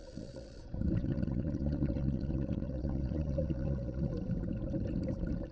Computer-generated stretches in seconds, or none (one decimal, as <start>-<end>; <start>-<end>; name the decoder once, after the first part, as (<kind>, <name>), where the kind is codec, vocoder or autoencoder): 0.0-0.6 (vocoder, Vocos); 1.0-4.1